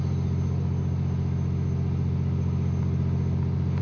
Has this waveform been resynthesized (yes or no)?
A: no